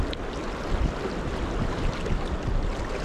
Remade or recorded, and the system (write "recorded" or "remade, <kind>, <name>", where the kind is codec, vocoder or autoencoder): recorded